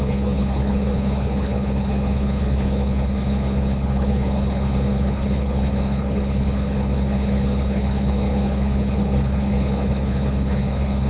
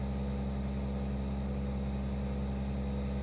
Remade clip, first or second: first